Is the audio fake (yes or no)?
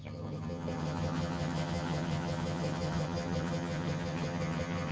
yes